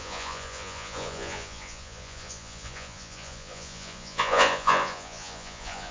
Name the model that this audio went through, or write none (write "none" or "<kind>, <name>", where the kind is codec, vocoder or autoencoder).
vocoder, Vocos